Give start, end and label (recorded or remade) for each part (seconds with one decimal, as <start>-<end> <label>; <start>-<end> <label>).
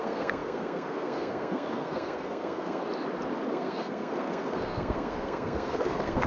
0.0-2.8 remade; 2.8-3.5 recorded; 3.5-6.3 remade